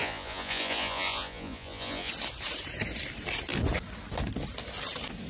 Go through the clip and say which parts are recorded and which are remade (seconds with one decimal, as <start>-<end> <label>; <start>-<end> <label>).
0.0-2.1 remade; 2.1-5.3 recorded